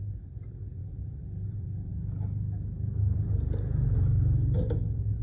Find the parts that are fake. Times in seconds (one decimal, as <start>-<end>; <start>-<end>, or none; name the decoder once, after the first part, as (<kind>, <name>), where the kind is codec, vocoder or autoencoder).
0.0-0.8 (vocoder, BigVGAN v2); 1.5-1.9